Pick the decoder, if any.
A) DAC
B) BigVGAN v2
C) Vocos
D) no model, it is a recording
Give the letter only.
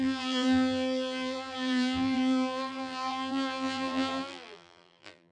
B